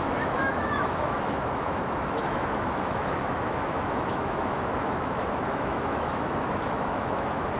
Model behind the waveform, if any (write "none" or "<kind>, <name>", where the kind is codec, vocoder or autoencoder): autoencoder, DAC-VAE